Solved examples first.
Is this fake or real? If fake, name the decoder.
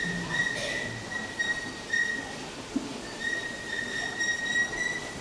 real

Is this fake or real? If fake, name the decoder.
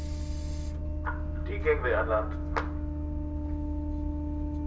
real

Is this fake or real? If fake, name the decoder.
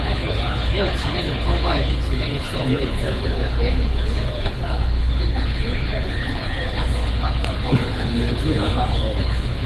fake, codec, HILCodec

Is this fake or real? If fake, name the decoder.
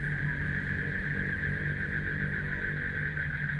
real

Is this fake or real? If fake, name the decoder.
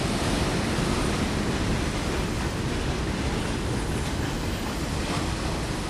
real